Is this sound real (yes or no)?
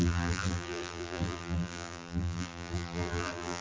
no